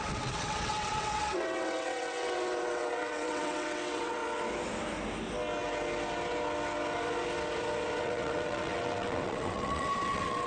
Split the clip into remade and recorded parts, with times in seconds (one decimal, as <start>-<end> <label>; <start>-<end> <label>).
0.0-4.2 remade; 4.2-8.0 recorded; 8.0-10.5 remade